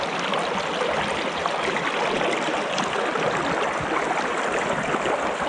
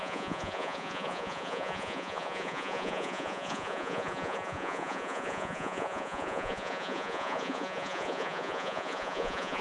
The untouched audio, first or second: first